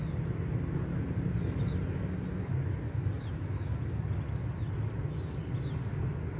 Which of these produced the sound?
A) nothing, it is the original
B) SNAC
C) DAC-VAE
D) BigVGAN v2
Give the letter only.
A